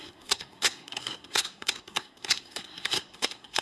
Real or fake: fake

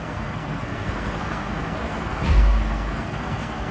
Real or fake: fake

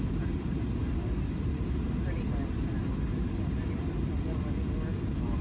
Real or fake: real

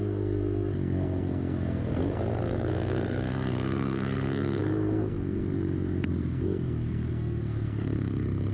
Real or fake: fake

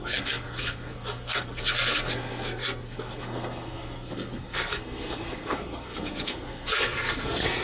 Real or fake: fake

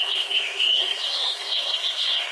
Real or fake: fake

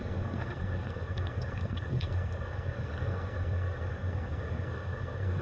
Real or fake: fake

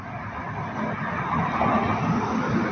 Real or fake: real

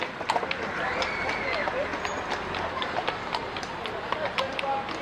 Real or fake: real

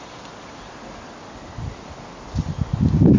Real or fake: real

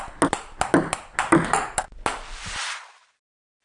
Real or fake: real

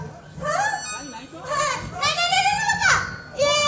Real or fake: real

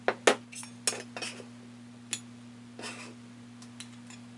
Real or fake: real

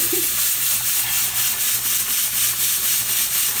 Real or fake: real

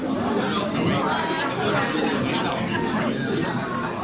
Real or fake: real